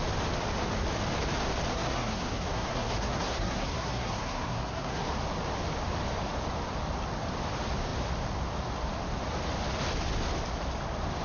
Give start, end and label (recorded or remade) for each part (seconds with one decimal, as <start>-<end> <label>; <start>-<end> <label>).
0.0-1.7 recorded; 1.7-5.0 remade; 5.0-11.2 recorded